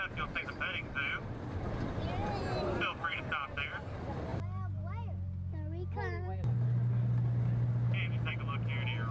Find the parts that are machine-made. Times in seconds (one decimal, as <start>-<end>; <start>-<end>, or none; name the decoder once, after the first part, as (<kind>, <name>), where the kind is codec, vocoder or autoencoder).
2.2-3.2 (vocoder, BigVGAN v2)